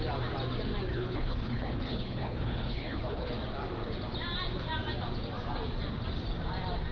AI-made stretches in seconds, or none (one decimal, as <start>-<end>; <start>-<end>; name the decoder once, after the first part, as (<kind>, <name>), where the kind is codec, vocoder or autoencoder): 0.9-3.3 (codec, HILCodec)